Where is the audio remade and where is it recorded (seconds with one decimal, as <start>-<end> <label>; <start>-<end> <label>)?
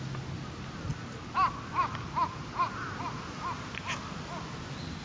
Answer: 0.0-5.0 recorded